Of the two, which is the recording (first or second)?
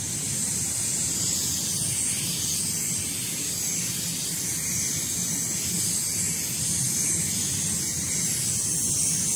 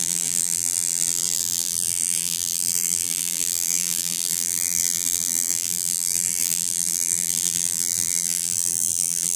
first